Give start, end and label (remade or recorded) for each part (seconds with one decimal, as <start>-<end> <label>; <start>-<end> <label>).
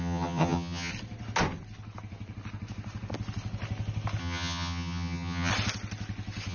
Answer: 0.0-0.9 remade; 0.9-4.2 recorded; 4.2-5.5 remade; 5.5-6.5 recorded